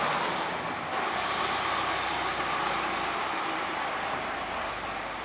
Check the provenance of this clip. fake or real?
real